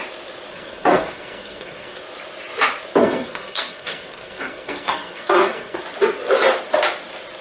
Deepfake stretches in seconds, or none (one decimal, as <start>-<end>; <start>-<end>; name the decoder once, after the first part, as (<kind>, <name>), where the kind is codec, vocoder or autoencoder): 0.5-2.0 (codec, SNAC); 3.0-5.8